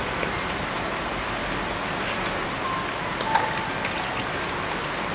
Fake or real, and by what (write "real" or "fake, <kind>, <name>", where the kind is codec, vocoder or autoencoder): real